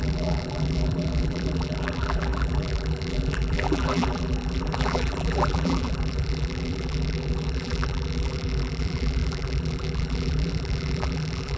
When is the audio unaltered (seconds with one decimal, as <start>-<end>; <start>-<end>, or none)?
none